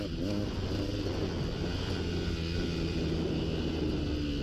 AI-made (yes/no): no